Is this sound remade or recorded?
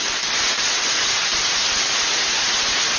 recorded